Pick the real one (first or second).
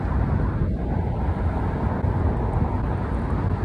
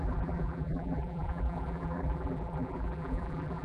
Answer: first